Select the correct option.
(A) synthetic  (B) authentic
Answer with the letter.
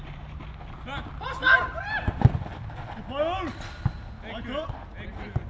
B